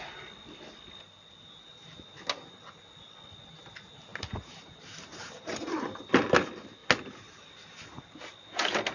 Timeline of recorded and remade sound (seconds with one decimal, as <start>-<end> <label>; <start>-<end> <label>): 0.0-4.1 recorded; 4.1-6.1 remade; 6.1-8.9 recorded